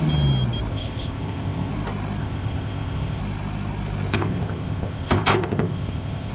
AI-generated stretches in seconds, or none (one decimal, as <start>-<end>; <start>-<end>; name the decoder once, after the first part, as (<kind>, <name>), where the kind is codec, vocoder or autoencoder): 0.7-1.7 (codec, ZipCodec); 2.2-3.2; 4.1-6.3

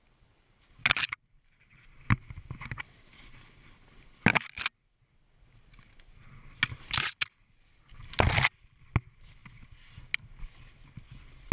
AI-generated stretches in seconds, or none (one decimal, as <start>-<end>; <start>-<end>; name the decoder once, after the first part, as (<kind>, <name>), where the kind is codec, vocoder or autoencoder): none